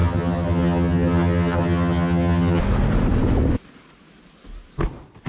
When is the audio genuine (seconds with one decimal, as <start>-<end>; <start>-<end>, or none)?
2.6-5.3